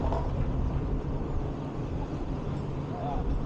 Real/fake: fake